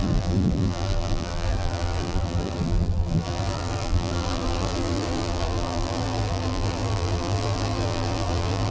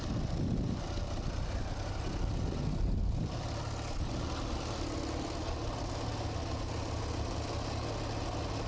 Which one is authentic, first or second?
second